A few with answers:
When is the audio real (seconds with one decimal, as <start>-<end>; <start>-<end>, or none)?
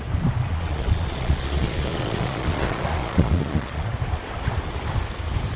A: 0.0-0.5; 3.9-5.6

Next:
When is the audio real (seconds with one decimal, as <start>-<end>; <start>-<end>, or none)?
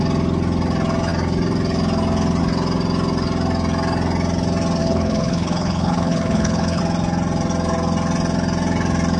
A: 0.0-4.8; 6.8-9.2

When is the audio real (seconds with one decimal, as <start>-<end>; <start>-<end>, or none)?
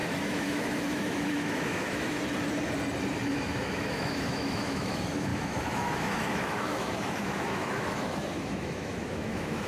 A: 2.2-3.3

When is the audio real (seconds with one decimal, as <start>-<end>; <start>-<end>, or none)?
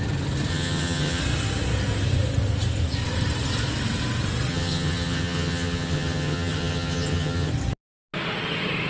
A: 0.0-0.5; 1.2-4.5; 7.5-8.9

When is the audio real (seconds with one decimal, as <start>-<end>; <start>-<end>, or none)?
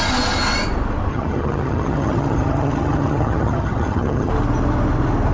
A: 0.0-1.1; 4.3-5.3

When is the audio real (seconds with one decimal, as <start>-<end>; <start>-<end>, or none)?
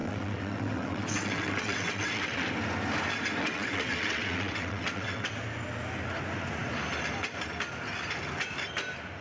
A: 2.5-3.4; 5.3-9.2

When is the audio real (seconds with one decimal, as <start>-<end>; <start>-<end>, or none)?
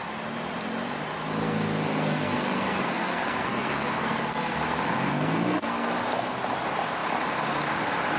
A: 0.0-1.4; 5.9-8.2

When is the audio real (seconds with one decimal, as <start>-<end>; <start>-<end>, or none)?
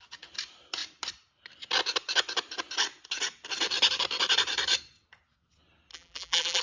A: 0.0-5.9